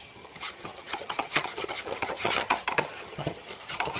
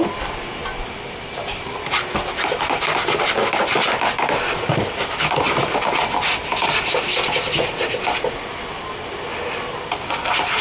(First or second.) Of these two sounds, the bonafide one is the second